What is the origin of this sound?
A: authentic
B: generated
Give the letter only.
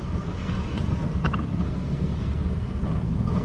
B